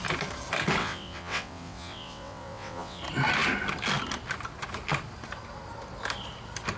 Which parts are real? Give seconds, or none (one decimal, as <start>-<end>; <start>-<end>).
0.0-0.8; 3.0-6.8